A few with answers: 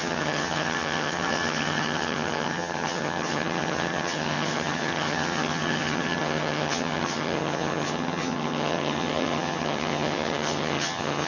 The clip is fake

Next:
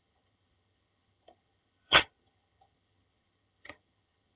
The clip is fake